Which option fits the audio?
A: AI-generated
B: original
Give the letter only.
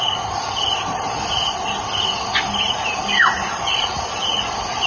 B